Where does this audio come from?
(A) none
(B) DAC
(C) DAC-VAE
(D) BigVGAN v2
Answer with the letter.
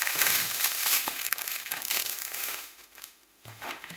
C